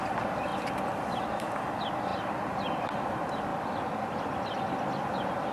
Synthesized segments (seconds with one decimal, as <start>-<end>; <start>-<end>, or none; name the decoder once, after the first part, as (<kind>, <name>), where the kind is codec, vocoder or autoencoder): none